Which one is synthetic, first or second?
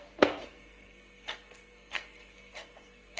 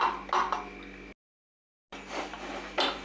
first